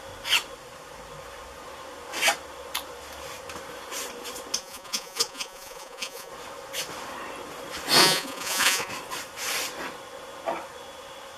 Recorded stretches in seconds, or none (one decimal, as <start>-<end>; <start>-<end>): 0.0-4.6; 6.3-8.0; 8.9-11.4